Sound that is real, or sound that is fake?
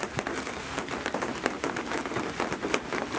real